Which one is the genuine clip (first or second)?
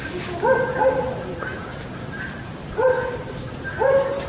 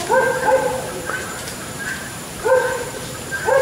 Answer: first